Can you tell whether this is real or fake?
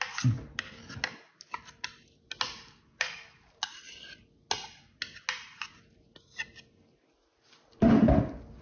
real